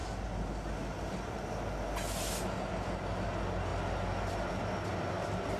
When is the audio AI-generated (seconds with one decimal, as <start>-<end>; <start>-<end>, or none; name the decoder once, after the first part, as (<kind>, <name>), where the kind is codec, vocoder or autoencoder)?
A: none